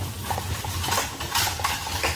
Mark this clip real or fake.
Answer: fake